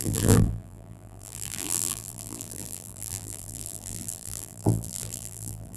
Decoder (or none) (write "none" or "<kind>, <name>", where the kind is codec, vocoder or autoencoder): vocoder, BigVGAN v2